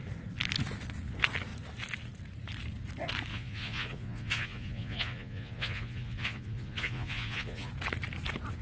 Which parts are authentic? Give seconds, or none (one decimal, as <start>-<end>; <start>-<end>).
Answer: 0.0-3.3; 7.7-8.6